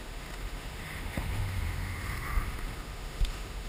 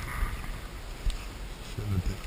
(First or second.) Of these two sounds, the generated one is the first